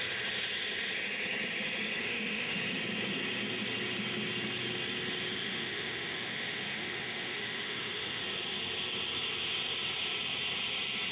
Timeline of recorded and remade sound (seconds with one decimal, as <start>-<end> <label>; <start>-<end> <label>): 0.0-2.0 recorded; 2.0-2.6 remade; 2.6-5.4 recorded; 5.4-8.2 remade; 8.2-11.1 recorded